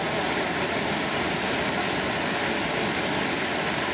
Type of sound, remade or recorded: recorded